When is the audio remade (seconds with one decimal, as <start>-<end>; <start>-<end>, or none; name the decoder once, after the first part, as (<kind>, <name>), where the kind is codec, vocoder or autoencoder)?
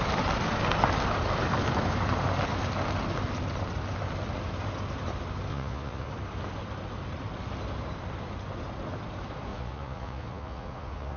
5.5-6.1 (vocoder, Vocos); 9.5-11.2